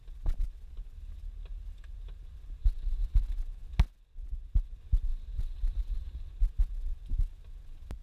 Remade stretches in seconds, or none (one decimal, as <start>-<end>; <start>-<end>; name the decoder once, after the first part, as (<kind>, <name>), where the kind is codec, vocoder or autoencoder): 2.6-3.2 (vocoder, BigVGAN v2); 5.1-6.3